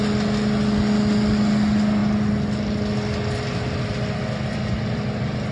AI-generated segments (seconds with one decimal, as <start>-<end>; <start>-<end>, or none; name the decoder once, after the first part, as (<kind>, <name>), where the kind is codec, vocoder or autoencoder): none